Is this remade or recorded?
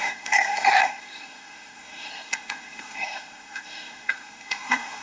remade